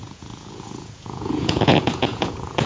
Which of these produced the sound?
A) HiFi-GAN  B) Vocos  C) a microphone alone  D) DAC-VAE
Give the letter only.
B